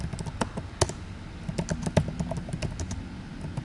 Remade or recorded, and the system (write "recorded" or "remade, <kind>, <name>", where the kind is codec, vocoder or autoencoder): recorded